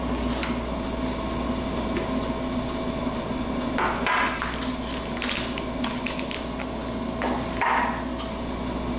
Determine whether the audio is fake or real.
real